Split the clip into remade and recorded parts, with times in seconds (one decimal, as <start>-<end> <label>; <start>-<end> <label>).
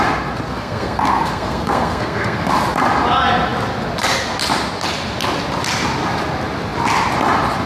0.0-0.5 recorded; 0.5-2.5 remade; 2.5-7.7 recorded